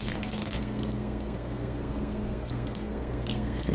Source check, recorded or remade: remade